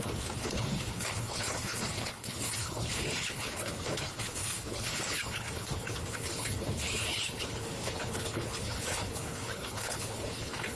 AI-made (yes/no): yes